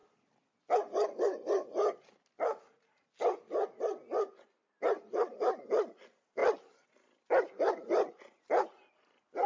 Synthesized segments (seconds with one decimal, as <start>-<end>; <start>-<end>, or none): none